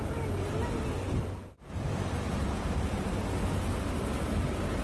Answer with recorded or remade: recorded